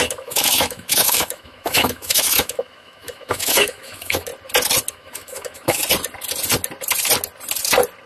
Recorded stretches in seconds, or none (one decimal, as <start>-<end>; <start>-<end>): 4.3-4.9; 5.8-8.1